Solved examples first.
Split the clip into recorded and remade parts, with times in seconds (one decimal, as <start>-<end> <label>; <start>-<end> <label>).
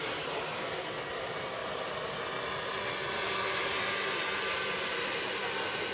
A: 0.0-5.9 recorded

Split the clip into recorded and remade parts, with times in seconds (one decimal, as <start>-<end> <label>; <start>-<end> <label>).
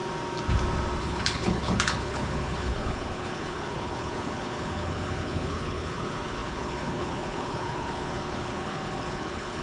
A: 0.0-1.0 recorded; 1.0-9.6 remade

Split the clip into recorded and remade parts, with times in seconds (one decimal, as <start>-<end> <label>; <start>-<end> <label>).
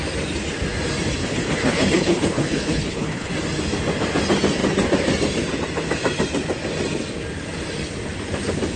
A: 0.0-1.2 recorded; 1.2-3.3 remade; 3.3-8.8 recorded